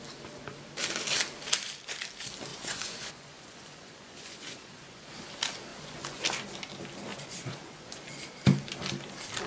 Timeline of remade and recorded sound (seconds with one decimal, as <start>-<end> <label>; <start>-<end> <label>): 0.0-2.5 recorded; 2.5-5.2 remade; 5.2-5.7 recorded; 5.7-6.2 remade; 6.2-7.1 recorded; 7.1-8.2 remade; 8.2-9.5 recorded